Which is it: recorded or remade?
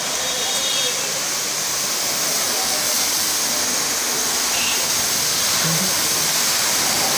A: recorded